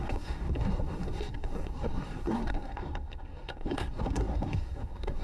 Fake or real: fake